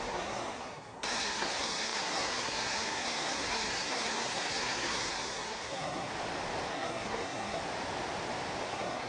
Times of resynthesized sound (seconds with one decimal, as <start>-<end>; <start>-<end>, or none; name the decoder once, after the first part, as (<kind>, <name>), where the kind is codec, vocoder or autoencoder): 0.0-6.1 (codec, SNAC); 6.7-7.6; 8.7-9.1